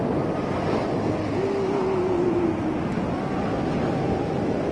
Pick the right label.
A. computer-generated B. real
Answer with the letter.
B